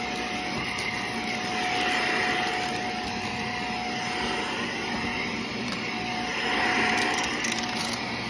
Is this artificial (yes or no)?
no